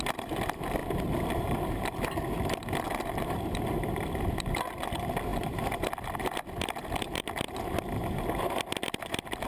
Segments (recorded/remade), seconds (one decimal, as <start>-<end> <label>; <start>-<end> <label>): 0.0-0.8 recorded; 0.8-4.6 remade; 4.6-5.3 recorded; 5.3-7.5 remade; 7.5-9.5 recorded